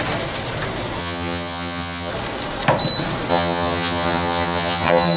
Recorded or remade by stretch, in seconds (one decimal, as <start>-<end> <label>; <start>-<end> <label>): 0.0-1.0 recorded; 1.0-2.1 remade; 2.1-3.3 recorded; 3.3-5.2 remade